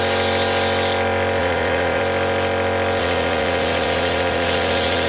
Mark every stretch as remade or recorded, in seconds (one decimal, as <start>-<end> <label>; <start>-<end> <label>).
0.0-1.4 recorded; 1.4-2.0 remade; 2.0-3.0 recorded; 3.0-5.1 remade